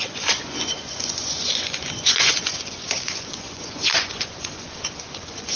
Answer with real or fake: fake